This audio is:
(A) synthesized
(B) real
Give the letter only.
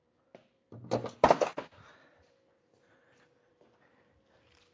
B